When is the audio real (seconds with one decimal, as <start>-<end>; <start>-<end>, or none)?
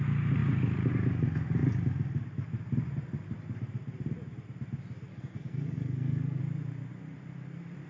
0.0-5.1; 6.4-7.9